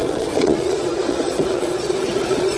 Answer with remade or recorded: remade